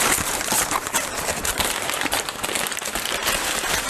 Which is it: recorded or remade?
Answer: remade